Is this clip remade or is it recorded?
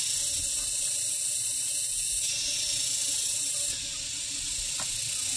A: recorded